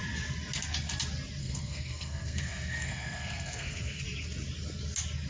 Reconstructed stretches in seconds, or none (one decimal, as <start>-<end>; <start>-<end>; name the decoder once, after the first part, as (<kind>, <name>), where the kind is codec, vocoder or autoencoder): 1.4-4.0 (codec, SNAC)